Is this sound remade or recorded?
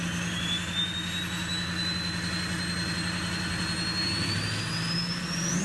recorded